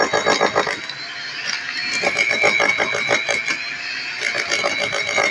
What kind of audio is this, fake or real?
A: real